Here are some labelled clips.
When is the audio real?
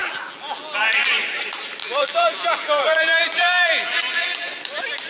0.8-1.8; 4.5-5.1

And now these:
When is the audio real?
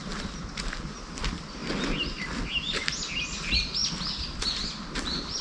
0.0-5.4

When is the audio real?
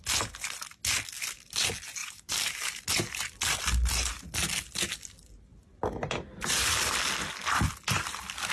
0.0-2.0; 2.8-5.5; 6.7-8.5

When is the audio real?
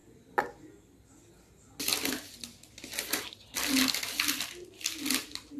0.0-5.6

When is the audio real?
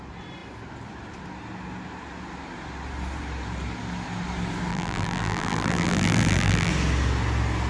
0.0-4.7; 6.7-7.7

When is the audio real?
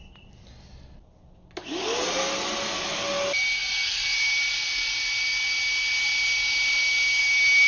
0.0-3.6; 4.3-7.7